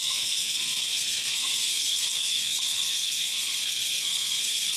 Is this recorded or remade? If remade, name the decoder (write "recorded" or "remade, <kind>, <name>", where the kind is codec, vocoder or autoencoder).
remade, codec, SNAC